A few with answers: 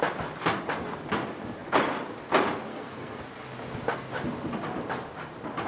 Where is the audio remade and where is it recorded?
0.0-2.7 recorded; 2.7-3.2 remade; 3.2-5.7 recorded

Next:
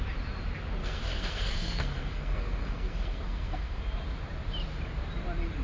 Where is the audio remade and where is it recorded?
0.0-0.8 recorded; 0.8-3.8 remade; 3.8-5.6 recorded

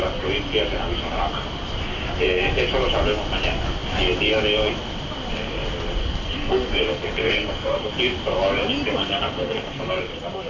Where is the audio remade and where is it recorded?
0.0-6.0 recorded; 6.0-7.9 remade; 7.9-9.0 recorded; 9.0-10.0 remade; 10.0-10.5 recorded

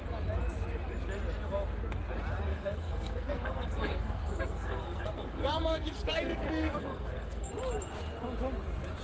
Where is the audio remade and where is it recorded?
0.0-2.5 recorded; 2.5-7.5 remade; 7.5-9.0 recorded

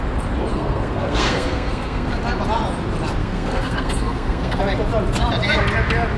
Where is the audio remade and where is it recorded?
0.0-0.5 recorded; 0.5-2.1 remade; 2.1-3.2 recorded; 3.2-4.6 remade; 4.6-6.2 recorded